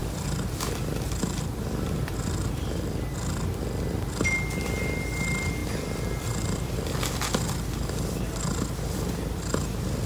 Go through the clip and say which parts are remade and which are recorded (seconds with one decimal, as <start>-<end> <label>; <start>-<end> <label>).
0.0-3.1 remade; 3.1-5.6 recorded; 5.6-6.7 remade; 6.7-10.1 recorded